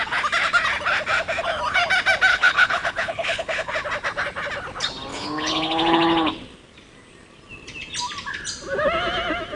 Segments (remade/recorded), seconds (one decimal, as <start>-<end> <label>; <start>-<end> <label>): 0.0-2.3 recorded; 2.3-3.7 remade; 3.7-5.1 recorded; 5.1-6.3 remade; 6.3-9.6 recorded